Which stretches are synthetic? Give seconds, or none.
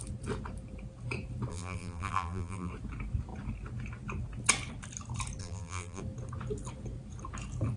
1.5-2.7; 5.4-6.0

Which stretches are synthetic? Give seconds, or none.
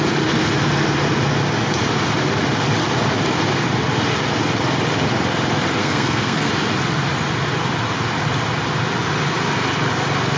5.8-6.5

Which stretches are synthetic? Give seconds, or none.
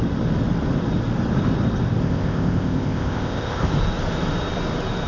2.0-3.7